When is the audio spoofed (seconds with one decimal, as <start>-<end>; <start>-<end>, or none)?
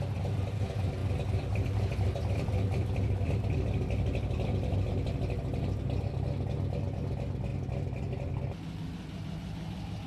1.0-4.9